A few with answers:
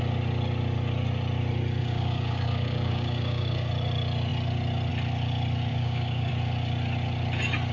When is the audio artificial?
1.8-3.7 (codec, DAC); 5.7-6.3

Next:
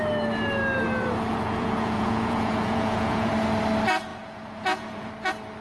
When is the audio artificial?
1.3-3.3 (vocoder, Vocos); 4.1-5.1

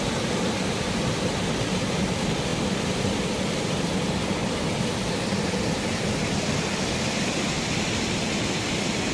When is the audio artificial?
none

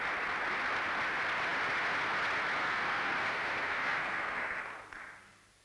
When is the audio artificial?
2.6-4.6 (codec, SNAC)

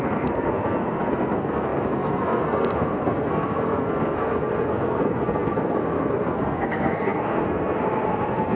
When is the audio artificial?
0.0-8.6 (codec, SNAC)

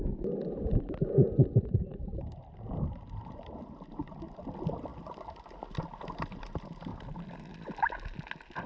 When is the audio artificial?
none